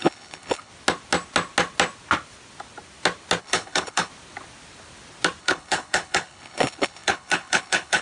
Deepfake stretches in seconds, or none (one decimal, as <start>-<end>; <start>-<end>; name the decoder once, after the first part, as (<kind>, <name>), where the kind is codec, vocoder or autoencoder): 0.0-0.7 (codec, HILCodec); 3.4-4.1; 5.4-8.0